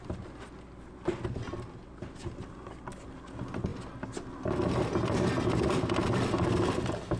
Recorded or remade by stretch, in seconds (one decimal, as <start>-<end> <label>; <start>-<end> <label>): 0.0-7.2 recorded